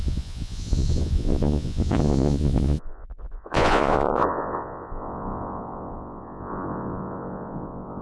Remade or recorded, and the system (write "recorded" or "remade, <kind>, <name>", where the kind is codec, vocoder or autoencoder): remade, vocoder, Vocos